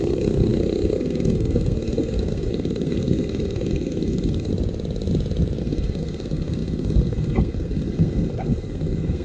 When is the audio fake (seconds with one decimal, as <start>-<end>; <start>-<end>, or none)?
0.0-4.5; 5.6-9.2